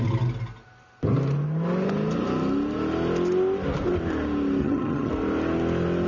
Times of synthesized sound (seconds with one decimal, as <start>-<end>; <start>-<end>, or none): 4.6-5.1